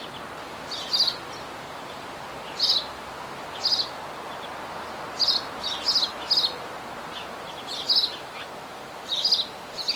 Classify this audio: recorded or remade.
recorded